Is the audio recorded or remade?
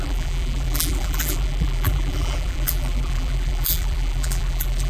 remade